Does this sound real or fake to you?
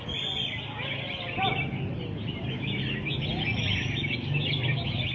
real